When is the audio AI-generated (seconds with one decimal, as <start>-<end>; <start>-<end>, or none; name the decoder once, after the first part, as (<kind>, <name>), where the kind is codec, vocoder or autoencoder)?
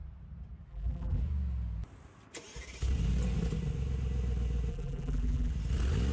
0.7-1.2 (vocoder, BigVGAN v2); 4.7-5.5